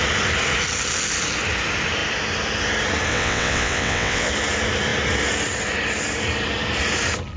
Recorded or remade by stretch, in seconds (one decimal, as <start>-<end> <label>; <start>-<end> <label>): 0.0-3.1 recorded; 3.1-4.3 remade; 4.3-7.4 recorded